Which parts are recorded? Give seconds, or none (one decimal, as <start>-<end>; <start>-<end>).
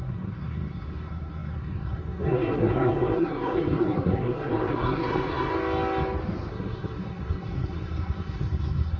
5.5-6.5